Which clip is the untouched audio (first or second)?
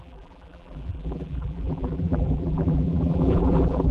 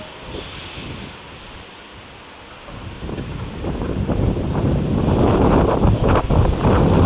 second